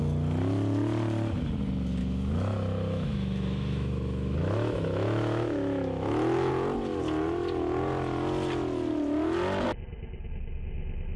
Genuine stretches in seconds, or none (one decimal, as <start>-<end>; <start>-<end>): 0.0-2.0; 6.5-11.2